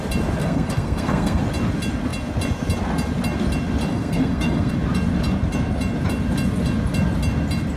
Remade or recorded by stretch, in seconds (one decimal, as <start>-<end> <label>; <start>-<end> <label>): 0.0-0.4 recorded; 0.4-1.4 remade; 1.4-3.9 recorded; 3.9-4.7 remade; 4.7-7.8 recorded